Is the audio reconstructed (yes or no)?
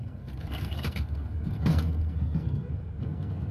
yes